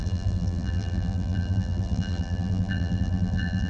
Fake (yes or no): yes